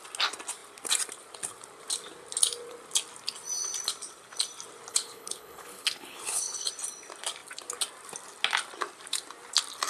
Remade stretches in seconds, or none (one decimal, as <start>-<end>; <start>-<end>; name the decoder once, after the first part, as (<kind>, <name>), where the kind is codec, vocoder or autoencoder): 4.9-6.7 (codec, HILCodec)